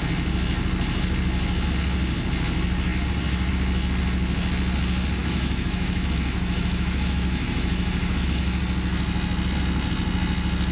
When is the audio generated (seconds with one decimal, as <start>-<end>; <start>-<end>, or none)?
5.2-8.6